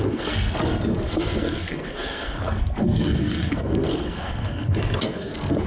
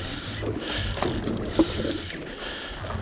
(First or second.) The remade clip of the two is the first